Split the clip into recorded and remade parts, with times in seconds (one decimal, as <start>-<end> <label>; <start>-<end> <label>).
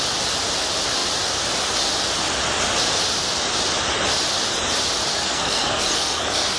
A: 0.0-5.1 recorded; 5.1-6.6 remade